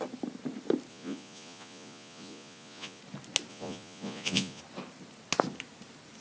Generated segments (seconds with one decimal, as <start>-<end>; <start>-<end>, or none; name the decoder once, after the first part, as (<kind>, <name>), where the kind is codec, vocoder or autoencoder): 0.9-3.0 (vocoder, Vocos); 3.5-4.6